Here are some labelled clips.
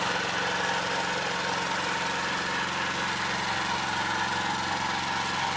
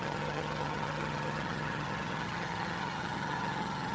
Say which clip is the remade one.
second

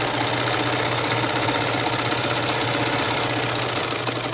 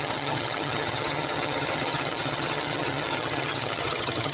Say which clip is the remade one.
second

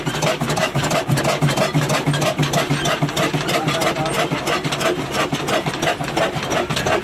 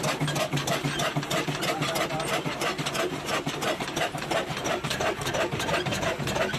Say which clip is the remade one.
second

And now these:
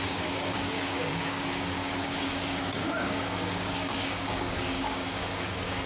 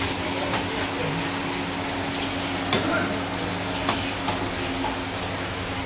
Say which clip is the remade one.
first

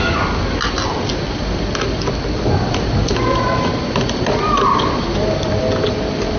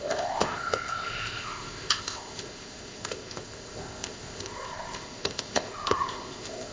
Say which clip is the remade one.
second